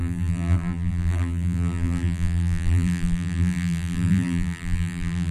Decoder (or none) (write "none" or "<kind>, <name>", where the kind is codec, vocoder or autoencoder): vocoder, BigVGAN v2